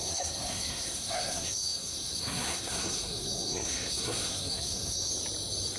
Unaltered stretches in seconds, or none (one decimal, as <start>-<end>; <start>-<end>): 5.1-5.8